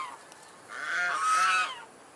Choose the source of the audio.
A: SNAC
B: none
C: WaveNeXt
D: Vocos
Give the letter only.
B